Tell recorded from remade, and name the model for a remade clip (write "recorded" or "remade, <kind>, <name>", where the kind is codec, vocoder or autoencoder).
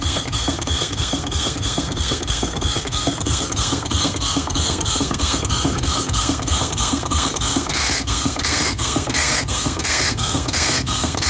remade, codec, SNAC